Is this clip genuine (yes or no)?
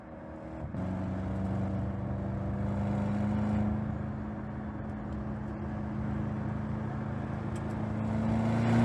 yes